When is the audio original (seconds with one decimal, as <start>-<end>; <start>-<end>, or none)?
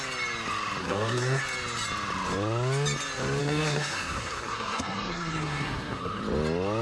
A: 0.0-0.8; 1.4-3.4; 6.2-6.8